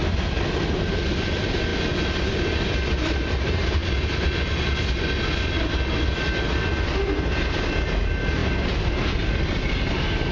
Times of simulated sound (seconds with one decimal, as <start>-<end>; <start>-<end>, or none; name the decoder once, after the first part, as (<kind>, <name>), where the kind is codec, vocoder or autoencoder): none